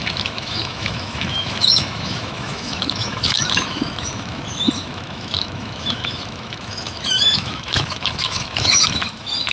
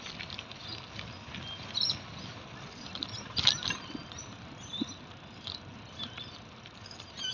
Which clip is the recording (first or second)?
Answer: second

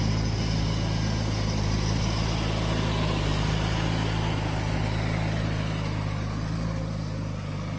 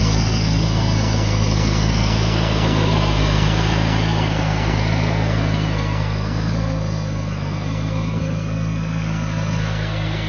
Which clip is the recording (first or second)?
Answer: first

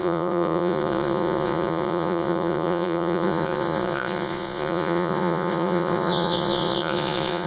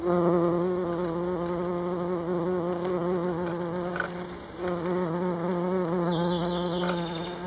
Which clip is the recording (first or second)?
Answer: second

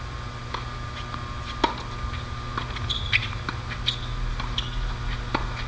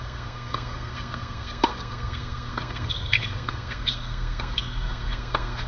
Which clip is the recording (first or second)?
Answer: first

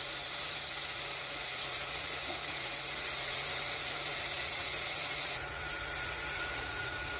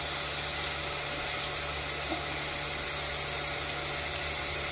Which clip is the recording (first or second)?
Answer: second